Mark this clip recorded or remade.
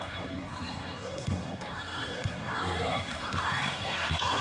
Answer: remade